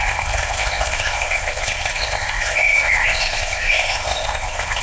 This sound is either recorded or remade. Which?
remade